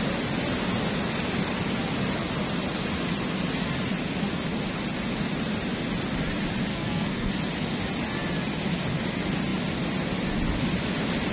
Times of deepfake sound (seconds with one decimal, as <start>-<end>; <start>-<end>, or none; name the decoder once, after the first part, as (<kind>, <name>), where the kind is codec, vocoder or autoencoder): 6.7-7.3 (codec, SNAC)